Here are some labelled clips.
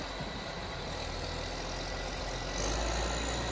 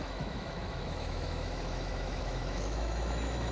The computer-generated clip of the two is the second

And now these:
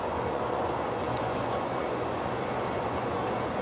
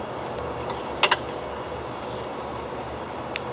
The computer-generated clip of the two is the first